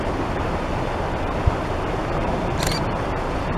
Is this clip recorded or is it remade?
remade